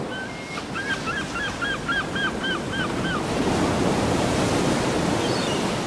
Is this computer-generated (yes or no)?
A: no